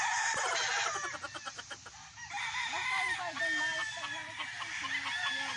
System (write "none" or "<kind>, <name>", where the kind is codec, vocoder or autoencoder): none